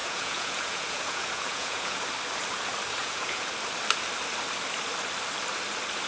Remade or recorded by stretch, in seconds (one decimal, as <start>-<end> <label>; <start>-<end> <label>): 0.0-2.0 remade; 2.0-3.0 recorded; 3.0-3.5 remade; 3.5-6.1 recorded